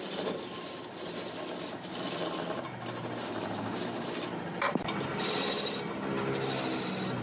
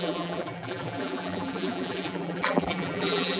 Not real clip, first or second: second